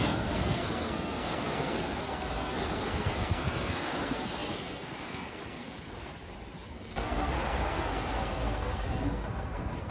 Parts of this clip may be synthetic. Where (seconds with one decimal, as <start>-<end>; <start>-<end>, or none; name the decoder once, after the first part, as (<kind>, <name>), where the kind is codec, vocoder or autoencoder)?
0.0-6.1 (codec, SNAC); 6.7-9.9